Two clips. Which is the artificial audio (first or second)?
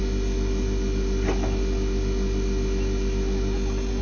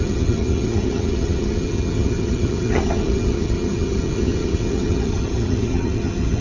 second